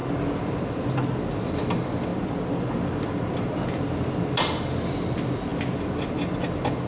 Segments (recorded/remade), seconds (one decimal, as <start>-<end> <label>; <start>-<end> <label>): 0.0-6.9 recorded